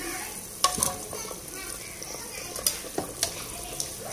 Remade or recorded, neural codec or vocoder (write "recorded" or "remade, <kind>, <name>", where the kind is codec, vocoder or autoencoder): recorded